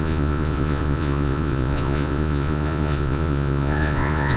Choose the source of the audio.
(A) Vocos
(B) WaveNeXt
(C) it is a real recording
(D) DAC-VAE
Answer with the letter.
A